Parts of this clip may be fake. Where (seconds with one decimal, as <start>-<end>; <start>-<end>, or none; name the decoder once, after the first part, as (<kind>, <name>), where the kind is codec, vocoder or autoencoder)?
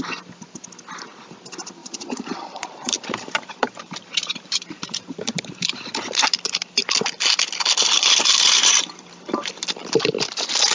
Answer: 1.8-6.3 (vocoder, BigVGAN v2); 7.8-9.5